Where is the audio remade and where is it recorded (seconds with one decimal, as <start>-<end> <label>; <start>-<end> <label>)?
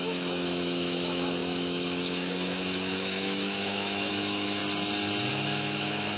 0.0-4.6 remade; 4.6-5.3 recorded; 5.3-6.2 remade